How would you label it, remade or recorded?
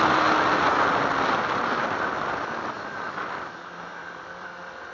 recorded